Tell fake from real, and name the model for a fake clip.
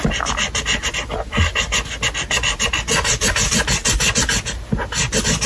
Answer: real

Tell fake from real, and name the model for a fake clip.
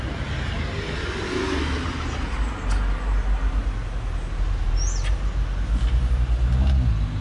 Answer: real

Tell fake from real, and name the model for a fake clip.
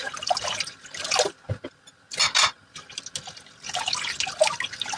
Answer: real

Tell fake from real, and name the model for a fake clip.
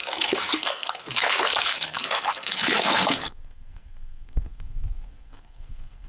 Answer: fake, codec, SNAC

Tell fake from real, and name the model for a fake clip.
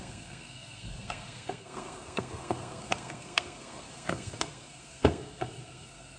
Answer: fake, codec, SNAC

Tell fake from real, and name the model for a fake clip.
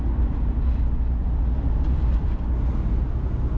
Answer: real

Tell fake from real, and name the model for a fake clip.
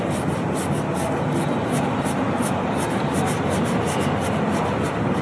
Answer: real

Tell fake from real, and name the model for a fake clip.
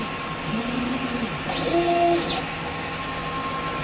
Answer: real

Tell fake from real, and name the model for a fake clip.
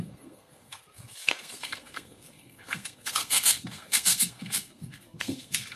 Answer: fake, codec, SNAC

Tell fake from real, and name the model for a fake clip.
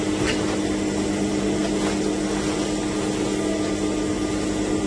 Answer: real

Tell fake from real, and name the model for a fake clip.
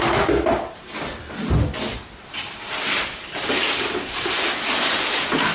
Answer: real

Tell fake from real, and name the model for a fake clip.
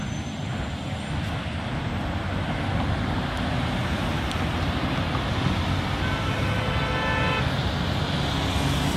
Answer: real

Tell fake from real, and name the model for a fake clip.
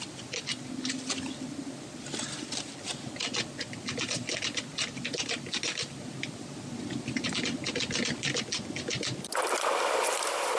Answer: real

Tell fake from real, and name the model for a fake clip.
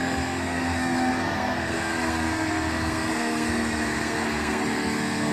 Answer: fake, codec, SNAC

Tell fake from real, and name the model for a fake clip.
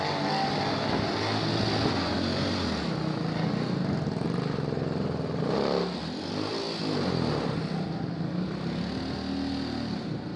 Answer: real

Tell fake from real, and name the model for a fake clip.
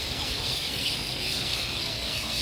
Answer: fake, codec, SNAC